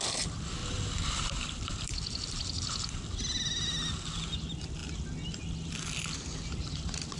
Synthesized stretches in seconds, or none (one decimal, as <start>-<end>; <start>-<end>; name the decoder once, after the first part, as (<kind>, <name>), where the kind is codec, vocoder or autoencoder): 0.6-3.0 (vocoder, BigVGAN v2)